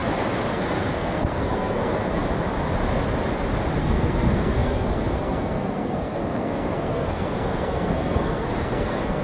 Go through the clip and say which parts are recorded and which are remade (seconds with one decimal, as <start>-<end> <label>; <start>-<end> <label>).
0.0-0.5 recorded; 0.5-2.2 remade; 2.2-3.8 recorded; 3.8-9.2 remade